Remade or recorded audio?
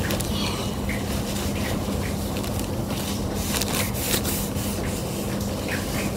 recorded